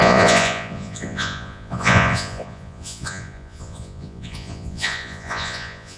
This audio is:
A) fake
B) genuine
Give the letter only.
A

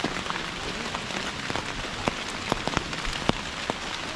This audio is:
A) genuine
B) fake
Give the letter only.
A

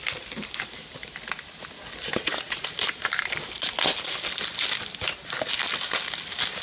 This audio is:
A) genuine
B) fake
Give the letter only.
A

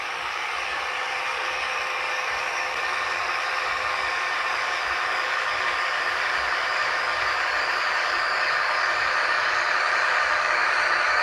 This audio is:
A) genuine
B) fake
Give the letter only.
B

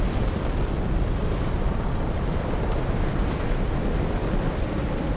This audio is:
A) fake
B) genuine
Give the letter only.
B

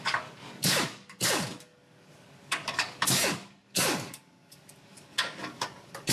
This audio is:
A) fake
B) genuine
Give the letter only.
A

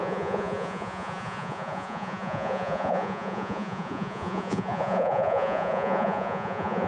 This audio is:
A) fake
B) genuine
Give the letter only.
A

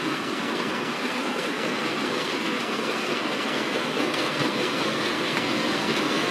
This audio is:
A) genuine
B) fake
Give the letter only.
B